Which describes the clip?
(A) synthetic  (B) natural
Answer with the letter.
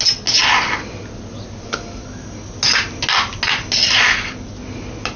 B